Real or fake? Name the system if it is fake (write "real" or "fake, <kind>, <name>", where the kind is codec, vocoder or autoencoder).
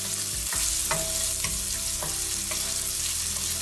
real